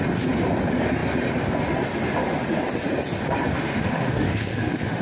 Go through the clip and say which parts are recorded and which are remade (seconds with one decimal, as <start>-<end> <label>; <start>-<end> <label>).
0.0-3.6 recorded; 3.6-5.0 remade